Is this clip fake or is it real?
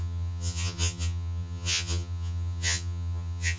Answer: fake